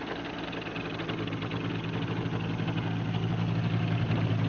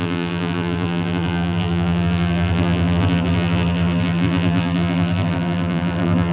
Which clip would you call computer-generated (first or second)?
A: second